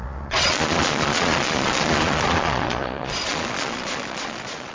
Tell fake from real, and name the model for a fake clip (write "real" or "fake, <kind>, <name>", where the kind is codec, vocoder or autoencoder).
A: fake, vocoder, Vocos